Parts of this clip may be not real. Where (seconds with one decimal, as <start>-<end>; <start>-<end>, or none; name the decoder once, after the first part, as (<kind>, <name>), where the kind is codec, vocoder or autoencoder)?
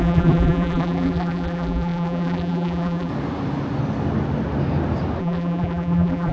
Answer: 0.0-3.1 (vocoder, BigVGAN v2); 5.2-6.3